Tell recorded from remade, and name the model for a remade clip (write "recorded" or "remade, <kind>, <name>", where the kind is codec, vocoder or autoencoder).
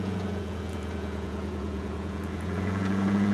remade, vocoder, Vocos